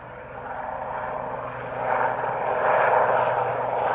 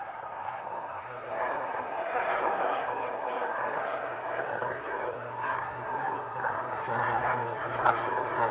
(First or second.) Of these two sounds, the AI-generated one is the second